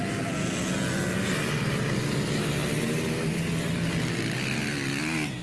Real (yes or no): yes